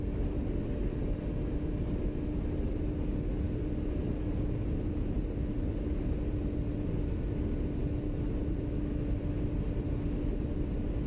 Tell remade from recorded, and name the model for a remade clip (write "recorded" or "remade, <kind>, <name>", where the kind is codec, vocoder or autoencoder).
recorded